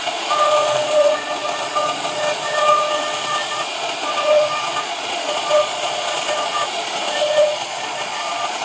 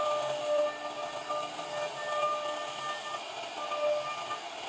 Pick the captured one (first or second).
second